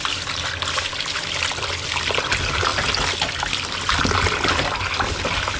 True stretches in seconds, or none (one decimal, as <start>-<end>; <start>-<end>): 0.0-5.6